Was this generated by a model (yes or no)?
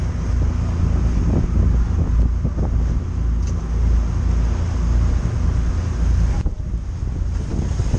no